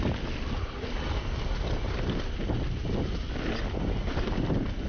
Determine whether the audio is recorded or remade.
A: recorded